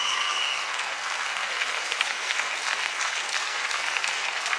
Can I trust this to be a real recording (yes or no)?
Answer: no